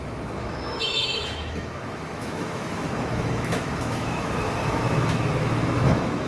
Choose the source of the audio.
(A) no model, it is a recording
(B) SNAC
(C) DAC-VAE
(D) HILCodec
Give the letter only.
C